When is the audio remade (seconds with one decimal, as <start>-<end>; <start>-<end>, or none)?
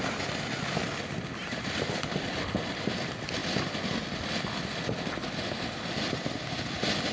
none